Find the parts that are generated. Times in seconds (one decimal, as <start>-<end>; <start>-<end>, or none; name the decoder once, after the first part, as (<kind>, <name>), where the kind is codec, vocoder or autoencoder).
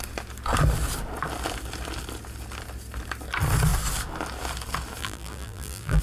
5.0-6.0 (vocoder, BigVGAN v2)